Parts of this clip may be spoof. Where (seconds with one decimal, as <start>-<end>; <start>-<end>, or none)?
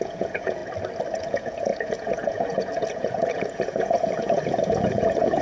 0.0-0.6; 1.2-5.4